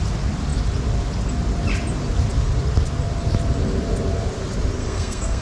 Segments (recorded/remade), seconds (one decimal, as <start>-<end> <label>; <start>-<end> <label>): 0.0-4.8 recorded; 4.8-5.4 remade